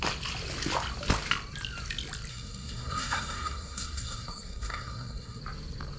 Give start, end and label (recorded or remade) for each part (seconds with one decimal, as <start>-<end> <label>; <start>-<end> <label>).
0.0-2.3 recorded; 2.3-5.4 remade; 5.4-6.0 recorded